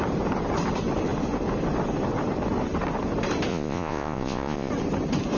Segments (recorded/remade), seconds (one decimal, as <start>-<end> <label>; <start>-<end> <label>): 0.0-3.5 recorded; 3.5-4.7 remade; 4.7-5.4 recorded